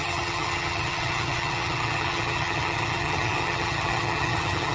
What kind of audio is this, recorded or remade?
remade